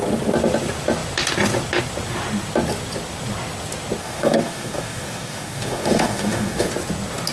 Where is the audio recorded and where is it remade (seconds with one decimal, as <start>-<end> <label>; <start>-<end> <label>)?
0.0-4.0 recorded; 4.0-6.7 remade; 6.7-7.3 recorded